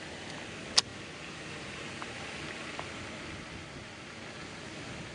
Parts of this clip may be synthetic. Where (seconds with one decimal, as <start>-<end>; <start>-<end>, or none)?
none